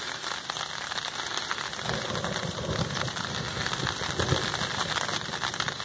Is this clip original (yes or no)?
yes